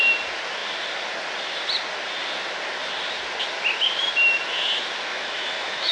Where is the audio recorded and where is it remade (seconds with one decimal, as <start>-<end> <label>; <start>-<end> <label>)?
0.0-5.1 recorded; 5.1-5.9 remade